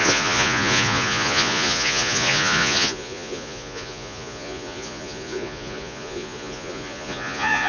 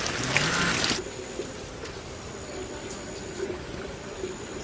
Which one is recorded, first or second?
second